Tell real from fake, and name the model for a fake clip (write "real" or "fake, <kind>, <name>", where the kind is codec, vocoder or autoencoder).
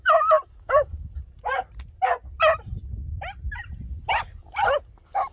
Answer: real